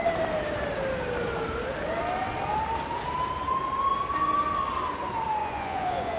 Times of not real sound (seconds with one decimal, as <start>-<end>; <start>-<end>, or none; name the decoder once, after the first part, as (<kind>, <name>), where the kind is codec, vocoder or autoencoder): 5.4-6.2 (vocoder, Vocos)